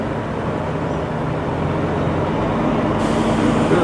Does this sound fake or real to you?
real